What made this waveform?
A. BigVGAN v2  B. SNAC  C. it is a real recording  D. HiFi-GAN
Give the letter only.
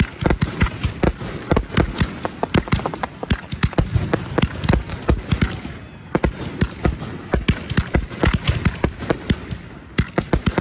C